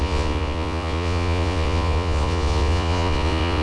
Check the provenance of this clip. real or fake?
fake